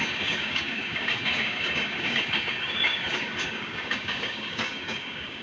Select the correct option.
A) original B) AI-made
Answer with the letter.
B